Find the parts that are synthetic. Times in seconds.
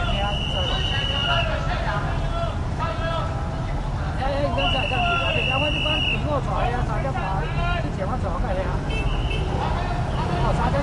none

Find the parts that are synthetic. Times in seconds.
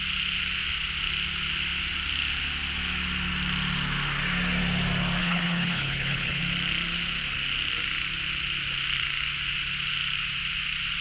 5.2-6.4 (codec, HILCodec)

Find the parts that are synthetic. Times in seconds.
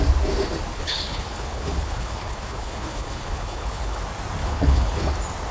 0.7-4.0 (codec, HILCodec); 4.4-5.1